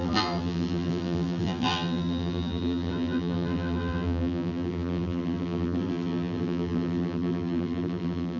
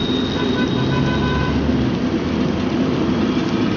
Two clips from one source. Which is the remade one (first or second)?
first